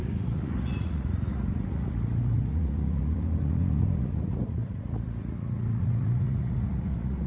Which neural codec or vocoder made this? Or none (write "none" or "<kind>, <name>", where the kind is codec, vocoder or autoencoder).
vocoder, Vocos